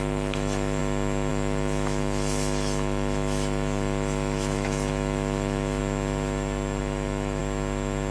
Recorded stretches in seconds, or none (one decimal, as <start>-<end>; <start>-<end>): 0.8-1.3; 5.8-6.8; 7.4-8.1